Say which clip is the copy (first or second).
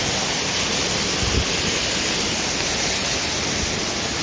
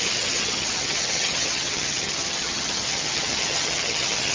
second